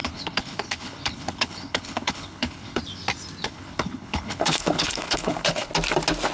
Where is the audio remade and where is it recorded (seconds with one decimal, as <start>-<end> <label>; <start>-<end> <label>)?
0.0-2.8 remade; 2.8-3.4 recorded; 3.4-5.7 remade; 5.7-6.3 recorded